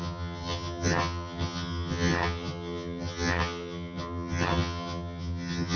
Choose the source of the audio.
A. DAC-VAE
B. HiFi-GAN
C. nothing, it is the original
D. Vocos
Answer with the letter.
B